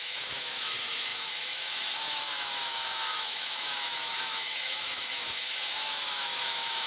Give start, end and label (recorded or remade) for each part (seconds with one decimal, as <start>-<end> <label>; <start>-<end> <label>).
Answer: 0.0-6.9 remade